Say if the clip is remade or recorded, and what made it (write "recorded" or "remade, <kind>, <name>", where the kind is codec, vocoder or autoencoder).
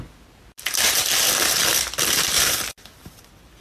recorded